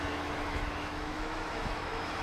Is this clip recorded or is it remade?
remade